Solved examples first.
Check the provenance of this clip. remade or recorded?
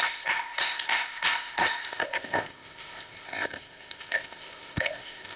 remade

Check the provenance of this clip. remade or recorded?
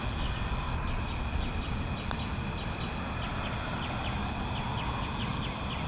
recorded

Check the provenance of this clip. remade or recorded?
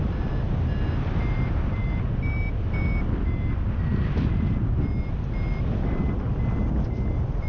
recorded